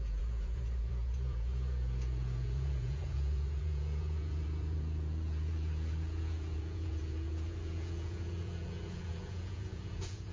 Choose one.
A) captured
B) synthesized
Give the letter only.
B